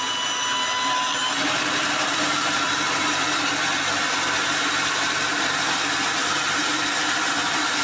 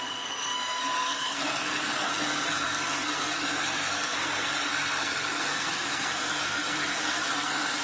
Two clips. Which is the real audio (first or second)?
first